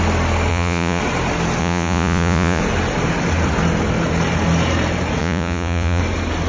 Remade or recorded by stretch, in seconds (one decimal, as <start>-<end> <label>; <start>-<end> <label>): 0.0-0.5 recorded; 0.5-1.0 remade; 1.0-1.6 recorded; 1.6-2.6 remade; 2.6-5.2 recorded; 5.2-6.0 remade; 6.0-6.5 recorded